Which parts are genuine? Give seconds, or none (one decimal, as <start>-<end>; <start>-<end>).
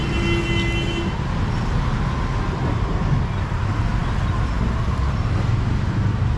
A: 0.0-6.4